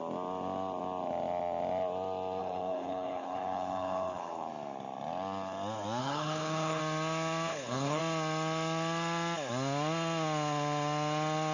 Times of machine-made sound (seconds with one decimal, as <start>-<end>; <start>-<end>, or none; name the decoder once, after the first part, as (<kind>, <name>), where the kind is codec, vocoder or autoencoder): 2.4-4.5 (codec, HILCodec); 6.0-6.8; 7.5-8.0